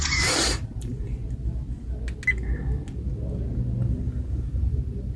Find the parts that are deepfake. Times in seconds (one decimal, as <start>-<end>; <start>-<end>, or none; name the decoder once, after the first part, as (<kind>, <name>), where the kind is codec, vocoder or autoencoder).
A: 0.0-1.2 (vocoder, BigVGAN v2); 4.3-5.2

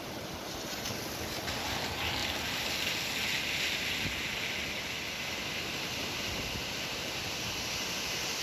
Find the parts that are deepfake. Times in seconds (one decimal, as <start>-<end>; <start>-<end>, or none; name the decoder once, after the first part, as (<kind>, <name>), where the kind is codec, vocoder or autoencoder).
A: 6.6-7.3 (vocoder, BigVGAN v2)

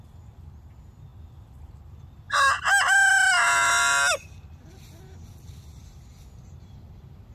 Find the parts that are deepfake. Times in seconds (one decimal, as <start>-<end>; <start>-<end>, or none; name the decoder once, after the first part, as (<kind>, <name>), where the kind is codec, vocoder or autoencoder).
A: none

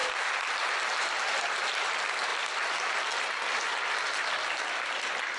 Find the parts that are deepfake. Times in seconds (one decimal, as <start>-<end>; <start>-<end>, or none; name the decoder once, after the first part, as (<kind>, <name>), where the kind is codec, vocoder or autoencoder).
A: 1.0-2.3 (vocoder, BigVGAN v2); 3.2-5.4

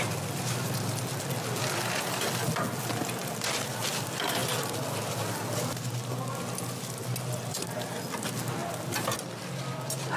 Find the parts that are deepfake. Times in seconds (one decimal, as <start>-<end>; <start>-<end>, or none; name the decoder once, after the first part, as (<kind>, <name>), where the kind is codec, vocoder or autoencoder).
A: 3.2-3.9 (vocoder, BigVGAN v2)

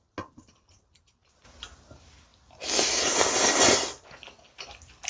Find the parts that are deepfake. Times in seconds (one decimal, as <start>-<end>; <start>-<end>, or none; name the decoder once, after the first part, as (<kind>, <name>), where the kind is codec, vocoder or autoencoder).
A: none